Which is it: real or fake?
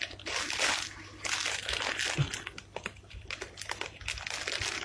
real